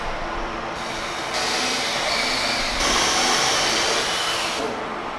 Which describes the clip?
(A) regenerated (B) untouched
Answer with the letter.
A